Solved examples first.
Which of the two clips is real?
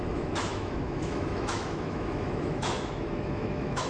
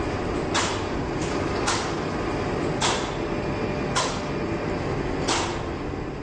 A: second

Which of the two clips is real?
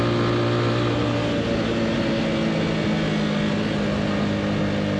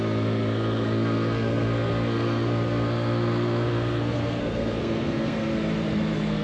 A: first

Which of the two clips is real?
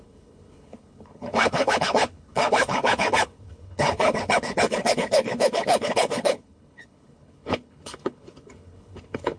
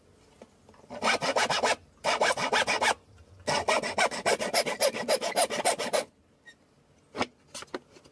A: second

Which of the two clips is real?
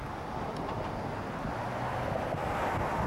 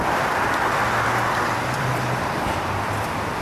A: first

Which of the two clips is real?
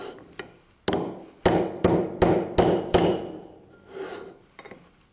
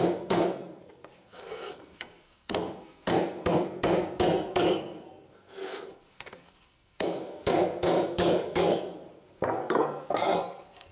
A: first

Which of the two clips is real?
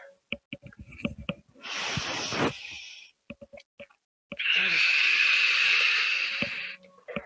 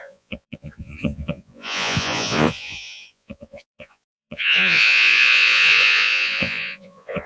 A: first